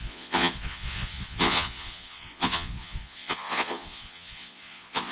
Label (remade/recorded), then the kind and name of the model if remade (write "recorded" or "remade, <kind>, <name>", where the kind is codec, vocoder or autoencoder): remade, vocoder, Vocos